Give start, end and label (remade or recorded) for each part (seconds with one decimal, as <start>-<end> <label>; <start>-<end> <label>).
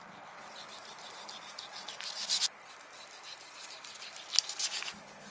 0.0-5.3 recorded